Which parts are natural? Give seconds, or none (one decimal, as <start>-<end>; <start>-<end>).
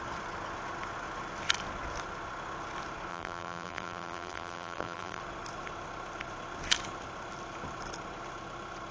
0.0-3.1; 5.2-8.9